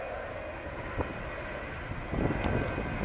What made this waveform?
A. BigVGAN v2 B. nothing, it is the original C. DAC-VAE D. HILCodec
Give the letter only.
B